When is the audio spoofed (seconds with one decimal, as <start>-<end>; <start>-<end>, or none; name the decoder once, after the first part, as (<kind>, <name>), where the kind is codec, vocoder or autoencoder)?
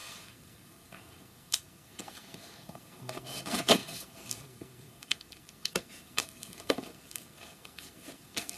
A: 0.0-8.6 (codec, SNAC)